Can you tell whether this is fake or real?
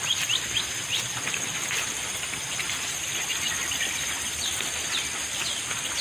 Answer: real